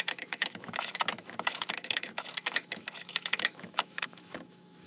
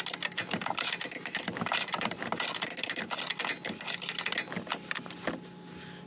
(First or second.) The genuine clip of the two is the second